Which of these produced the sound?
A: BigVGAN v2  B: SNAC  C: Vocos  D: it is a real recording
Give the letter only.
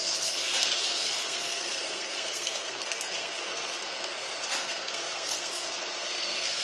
B